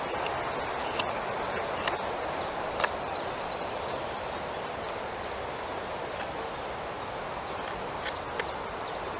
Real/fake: real